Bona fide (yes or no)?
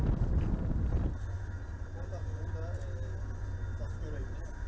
yes